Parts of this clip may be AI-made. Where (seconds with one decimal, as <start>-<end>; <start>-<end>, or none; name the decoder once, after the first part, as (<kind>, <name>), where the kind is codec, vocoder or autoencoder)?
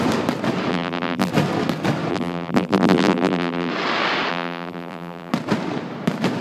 0.7-1.3 (vocoder, BigVGAN v2); 2.1-3.7; 4.3-5.3